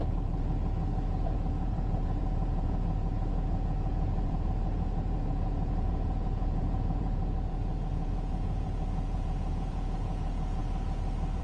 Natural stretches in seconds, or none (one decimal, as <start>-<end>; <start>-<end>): 10.6-11.4